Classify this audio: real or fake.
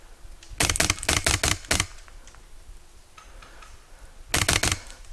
real